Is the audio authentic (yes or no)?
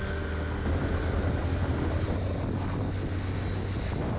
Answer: yes